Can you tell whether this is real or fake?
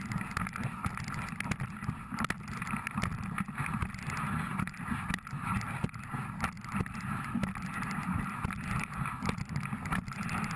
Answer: real